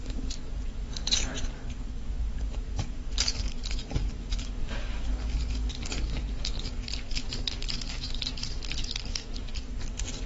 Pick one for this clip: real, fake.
fake